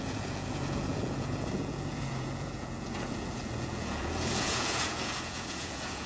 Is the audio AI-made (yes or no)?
yes